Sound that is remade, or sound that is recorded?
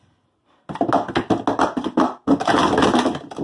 recorded